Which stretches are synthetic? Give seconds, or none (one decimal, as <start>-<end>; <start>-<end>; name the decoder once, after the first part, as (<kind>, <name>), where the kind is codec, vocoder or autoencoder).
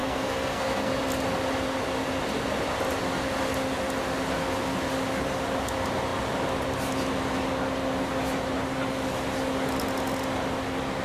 0.0-0.9 (codec, SNAC)